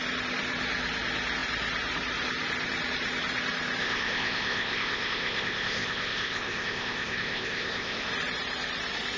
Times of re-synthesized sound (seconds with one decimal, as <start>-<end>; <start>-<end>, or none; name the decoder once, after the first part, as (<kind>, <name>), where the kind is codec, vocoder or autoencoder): 3.8-8.1 (codec, ZipCodec)